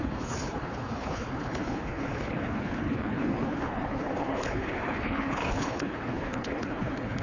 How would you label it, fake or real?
fake